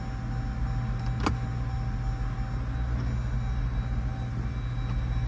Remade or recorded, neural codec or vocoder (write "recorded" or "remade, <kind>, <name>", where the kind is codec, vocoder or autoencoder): recorded